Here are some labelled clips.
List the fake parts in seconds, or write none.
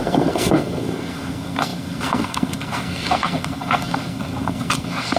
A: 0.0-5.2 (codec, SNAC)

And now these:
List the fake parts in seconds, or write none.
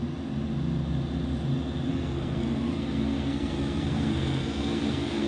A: 1.9-5.3 (codec, SNAC)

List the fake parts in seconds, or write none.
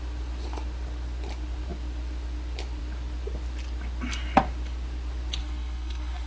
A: 5.4-6.3 (codec, SNAC)